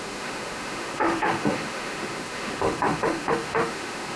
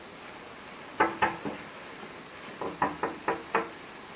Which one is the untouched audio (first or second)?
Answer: second